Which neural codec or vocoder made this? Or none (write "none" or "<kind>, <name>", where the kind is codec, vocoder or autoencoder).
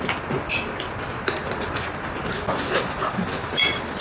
none